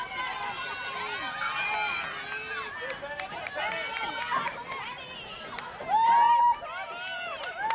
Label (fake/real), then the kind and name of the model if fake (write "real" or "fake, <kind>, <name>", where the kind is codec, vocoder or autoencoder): real